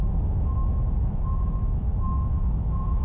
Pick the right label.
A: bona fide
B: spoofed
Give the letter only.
B